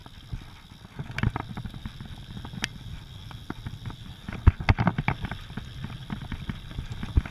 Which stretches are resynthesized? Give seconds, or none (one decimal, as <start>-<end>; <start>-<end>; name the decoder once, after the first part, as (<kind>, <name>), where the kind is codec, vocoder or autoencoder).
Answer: none